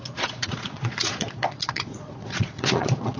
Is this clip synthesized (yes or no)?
yes